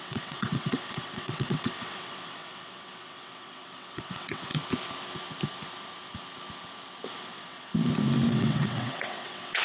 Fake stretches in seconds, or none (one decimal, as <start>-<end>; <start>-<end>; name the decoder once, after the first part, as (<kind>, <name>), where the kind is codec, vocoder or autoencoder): 0.0-4.5 (vocoder, WaveNeXt); 7.3-7.7; 8.3-9.6